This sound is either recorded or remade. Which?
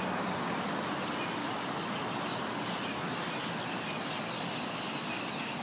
recorded